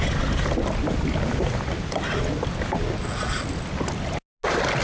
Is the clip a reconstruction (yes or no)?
no